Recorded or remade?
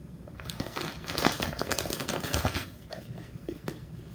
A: remade